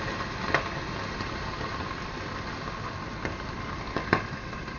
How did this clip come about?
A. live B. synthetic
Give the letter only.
A